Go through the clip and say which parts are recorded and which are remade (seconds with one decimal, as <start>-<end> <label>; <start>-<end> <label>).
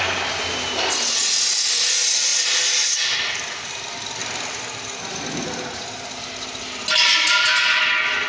0.0-2.3 recorded; 2.3-3.7 remade; 3.7-4.2 recorded; 4.2-7.8 remade; 7.8-8.3 recorded